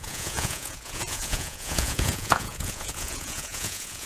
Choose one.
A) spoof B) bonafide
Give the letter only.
A